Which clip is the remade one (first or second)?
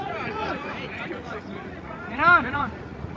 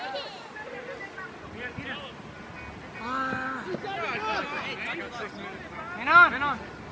first